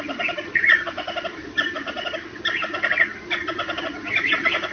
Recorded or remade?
recorded